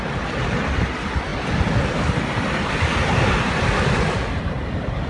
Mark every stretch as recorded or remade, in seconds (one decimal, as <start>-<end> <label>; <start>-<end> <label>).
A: 0.0-5.1 recorded